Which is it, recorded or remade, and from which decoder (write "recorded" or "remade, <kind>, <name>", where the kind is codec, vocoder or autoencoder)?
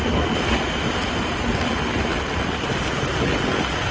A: recorded